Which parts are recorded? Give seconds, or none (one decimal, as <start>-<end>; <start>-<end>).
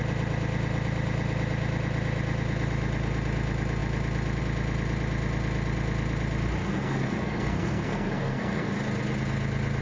0.0-6.6; 8.7-9.8